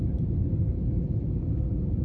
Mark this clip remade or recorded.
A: recorded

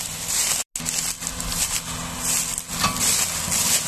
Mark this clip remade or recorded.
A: recorded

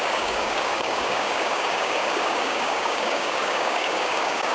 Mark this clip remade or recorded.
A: remade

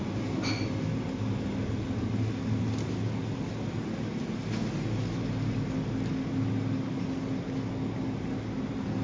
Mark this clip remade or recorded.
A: recorded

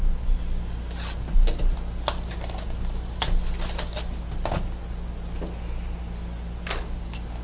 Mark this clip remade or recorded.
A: recorded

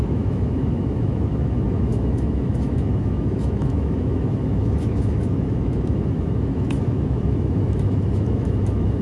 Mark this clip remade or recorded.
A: remade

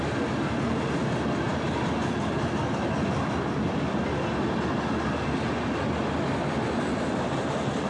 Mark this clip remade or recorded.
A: recorded